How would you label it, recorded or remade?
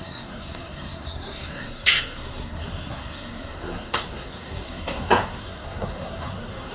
remade